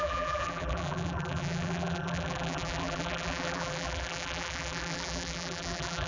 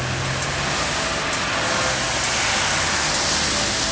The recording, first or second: second